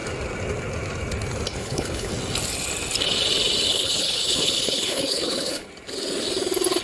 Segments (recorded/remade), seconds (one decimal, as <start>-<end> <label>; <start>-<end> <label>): 0.0-1.5 recorded; 1.5-2.1 remade; 2.1-3.7 recorded; 3.7-5.7 remade; 5.7-6.8 recorded